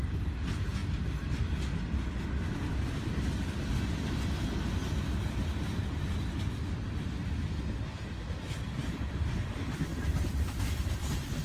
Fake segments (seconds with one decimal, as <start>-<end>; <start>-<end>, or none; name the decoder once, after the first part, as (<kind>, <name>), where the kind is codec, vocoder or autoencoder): 9.9-10.6 (vocoder, BigVGAN v2)